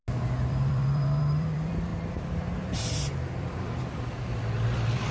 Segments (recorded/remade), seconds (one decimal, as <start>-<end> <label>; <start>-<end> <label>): 0.0-0.5 recorded; 0.5-5.1 remade